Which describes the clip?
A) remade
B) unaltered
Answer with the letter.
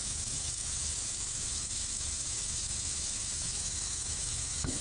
A